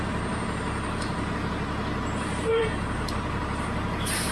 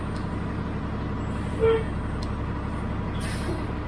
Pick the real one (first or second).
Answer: second